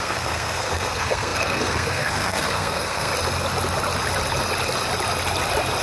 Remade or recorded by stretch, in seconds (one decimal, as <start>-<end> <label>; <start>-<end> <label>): 0.0-3.1 remade; 3.1-5.8 recorded